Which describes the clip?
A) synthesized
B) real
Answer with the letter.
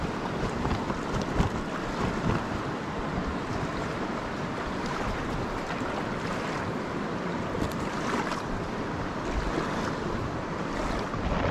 B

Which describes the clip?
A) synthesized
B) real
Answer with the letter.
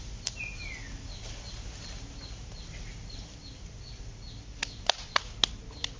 B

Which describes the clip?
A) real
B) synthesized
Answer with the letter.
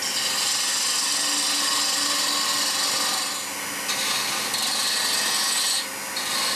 A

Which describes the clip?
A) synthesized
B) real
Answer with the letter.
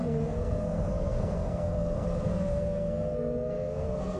A